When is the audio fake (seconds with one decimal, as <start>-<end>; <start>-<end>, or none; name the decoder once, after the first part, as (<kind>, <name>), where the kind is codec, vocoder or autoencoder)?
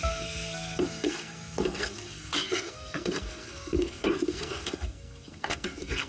0.0-6.1 (codec, SNAC)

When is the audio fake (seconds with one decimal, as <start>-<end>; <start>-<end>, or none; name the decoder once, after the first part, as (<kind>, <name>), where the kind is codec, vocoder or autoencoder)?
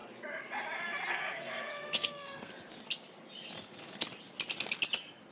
1.1-2.5 (codec, SNAC)